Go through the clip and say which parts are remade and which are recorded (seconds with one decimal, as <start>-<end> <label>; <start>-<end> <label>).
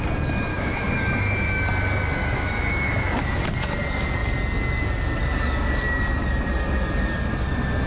0.0-0.5 recorded; 0.5-1.6 remade; 1.6-2.2 recorded; 2.2-3.4 remade; 3.4-7.9 recorded